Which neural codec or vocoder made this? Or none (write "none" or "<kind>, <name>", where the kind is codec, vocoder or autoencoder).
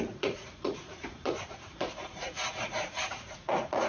vocoder, Vocos